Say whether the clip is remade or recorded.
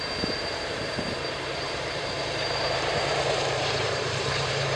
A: remade